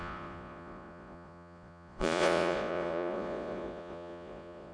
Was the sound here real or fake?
fake